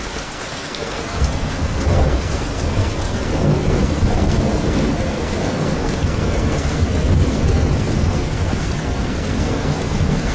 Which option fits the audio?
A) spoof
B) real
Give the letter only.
A